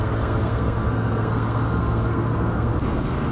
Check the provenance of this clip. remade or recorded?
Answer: remade